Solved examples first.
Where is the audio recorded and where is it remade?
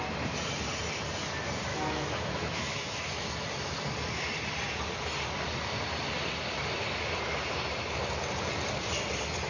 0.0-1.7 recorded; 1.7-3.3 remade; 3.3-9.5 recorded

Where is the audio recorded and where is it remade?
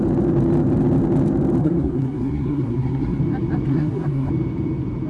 0.0-1.6 recorded; 1.6-3.2 remade; 3.2-3.7 recorded; 3.7-4.3 remade; 4.3-5.1 recorded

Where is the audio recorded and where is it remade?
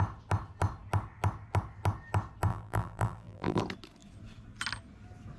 0.0-2.5 recorded; 2.5-3.6 remade; 3.6-5.4 recorded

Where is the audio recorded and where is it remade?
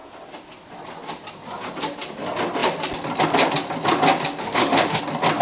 0.0-4.4 recorded; 4.4-5.0 remade; 5.0-5.4 recorded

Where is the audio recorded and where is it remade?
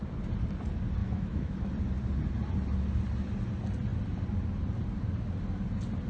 0.0-1.0 recorded; 1.0-1.7 remade; 1.7-6.1 recorded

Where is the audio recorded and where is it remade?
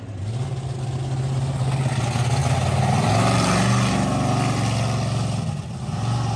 0.0-6.4 recorded